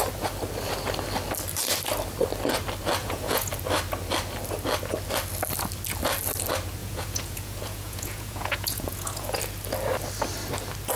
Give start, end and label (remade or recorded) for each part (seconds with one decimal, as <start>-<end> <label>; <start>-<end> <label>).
0.0-3.0 recorded; 3.0-3.5 remade; 3.5-6.8 recorded; 6.8-9.4 remade; 9.4-11.0 recorded